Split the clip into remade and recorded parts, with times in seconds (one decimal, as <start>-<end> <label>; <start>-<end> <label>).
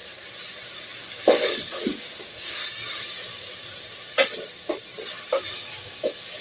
0.0-1.0 recorded; 1.0-2.6 remade; 2.6-5.5 recorded; 5.5-6.4 remade